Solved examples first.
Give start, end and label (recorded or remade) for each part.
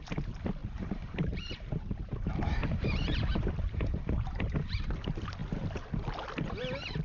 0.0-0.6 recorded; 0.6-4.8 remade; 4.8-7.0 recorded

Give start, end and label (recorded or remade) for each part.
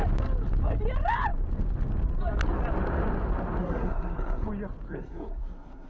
0.0-3.6 recorded; 3.6-4.5 remade; 4.5-4.9 recorded; 4.9-5.9 remade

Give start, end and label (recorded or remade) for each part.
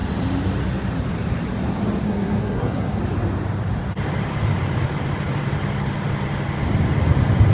0.0-2.0 recorded; 2.0-3.0 remade; 3.0-7.5 recorded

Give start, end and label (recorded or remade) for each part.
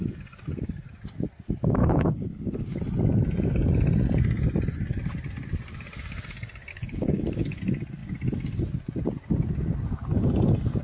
0.0-1.8 recorded; 1.8-2.8 remade; 2.8-6.7 recorded; 6.7-7.6 remade; 7.6-10.8 recorded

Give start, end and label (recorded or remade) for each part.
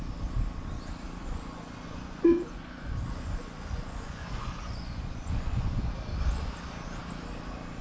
0.0-1.2 recorded; 1.2-5.9 remade; 5.9-7.8 recorded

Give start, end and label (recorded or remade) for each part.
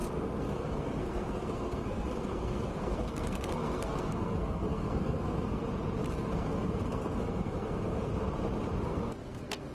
0.0-5.6 remade; 5.6-6.1 recorded; 6.1-8.1 remade; 8.1-8.8 recorded; 8.8-9.7 remade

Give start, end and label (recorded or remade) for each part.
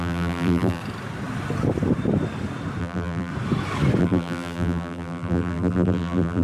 0.0-0.8 remade; 0.8-2.8 recorded; 2.8-3.3 remade; 3.3-4.0 recorded; 4.0-6.4 remade